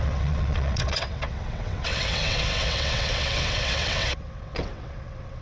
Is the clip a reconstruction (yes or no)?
yes